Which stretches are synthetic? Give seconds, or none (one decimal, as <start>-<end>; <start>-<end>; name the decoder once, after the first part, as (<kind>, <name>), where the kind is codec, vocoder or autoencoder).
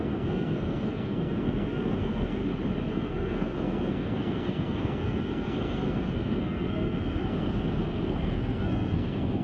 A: 0.0-2.4 (codec, SNAC); 2.9-9.4